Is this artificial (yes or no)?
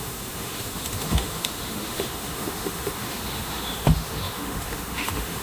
yes